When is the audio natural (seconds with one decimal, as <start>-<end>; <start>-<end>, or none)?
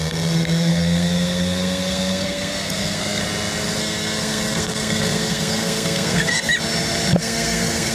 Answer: 3.2-3.8; 6.5-7.2